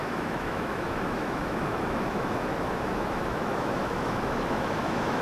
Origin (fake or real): fake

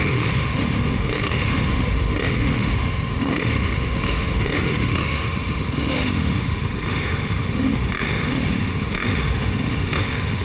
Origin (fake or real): fake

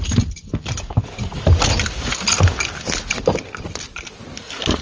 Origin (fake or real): real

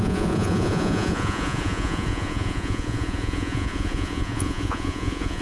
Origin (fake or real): fake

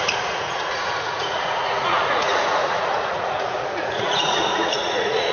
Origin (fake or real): fake